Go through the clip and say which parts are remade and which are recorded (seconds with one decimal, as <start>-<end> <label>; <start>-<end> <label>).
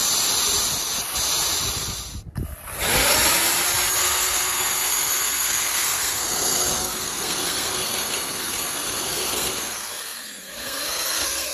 0.0-4.0 recorded; 4.0-11.5 remade